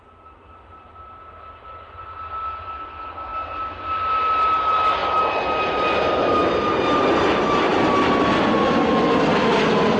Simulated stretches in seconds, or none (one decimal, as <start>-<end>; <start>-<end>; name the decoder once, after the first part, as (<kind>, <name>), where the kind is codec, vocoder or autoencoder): none

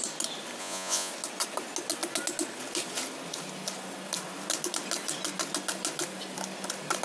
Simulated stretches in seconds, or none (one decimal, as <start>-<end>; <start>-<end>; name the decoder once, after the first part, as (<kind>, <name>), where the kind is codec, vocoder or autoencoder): 0.6-1.1 (vocoder, Vocos)

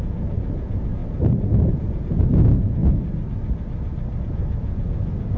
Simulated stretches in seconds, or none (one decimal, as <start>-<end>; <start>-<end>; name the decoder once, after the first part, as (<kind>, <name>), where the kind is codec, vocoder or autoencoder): 0.0-1.0 (vocoder, Vocos); 1.7-2.8; 4.2-5.4

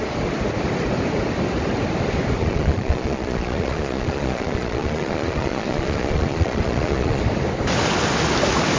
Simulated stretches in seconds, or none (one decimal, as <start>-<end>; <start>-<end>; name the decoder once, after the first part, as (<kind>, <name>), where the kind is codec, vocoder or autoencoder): 2.4-7.2 (vocoder, Vocos)

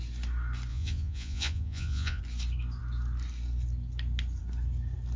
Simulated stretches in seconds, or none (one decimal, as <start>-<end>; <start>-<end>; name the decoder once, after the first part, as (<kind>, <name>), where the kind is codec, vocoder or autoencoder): 0.7-2.2 (vocoder, Vocos)

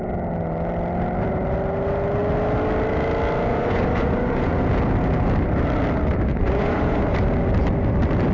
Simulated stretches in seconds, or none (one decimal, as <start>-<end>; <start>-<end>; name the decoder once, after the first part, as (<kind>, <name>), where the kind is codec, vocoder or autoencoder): 3.5-4.6 (vocoder, Vocos); 6.3-7.0